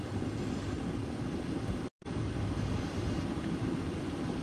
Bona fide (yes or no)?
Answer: yes